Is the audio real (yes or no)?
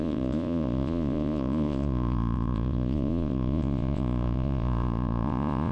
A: no